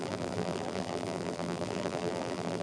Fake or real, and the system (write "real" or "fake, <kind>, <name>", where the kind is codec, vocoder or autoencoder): fake, vocoder, BigVGAN v2